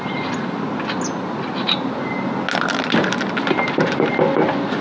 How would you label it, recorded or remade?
recorded